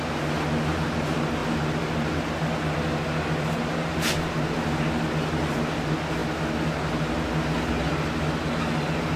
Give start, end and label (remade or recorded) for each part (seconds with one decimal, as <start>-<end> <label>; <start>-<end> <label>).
0.0-9.2 recorded